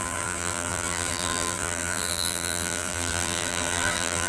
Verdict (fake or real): fake